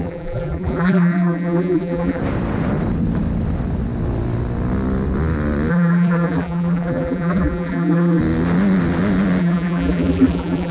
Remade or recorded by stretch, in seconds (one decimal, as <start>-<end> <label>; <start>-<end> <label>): 0.0-2.2 remade; 2.2-5.7 recorded; 5.7-8.2 remade; 8.2-9.4 recorded; 9.4-10.7 remade